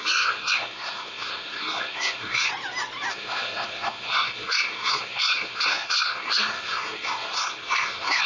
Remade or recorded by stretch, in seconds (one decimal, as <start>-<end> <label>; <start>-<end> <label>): 0.0-2.5 remade; 2.5-3.1 recorded; 3.1-8.3 remade